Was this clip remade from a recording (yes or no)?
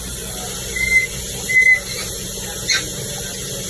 no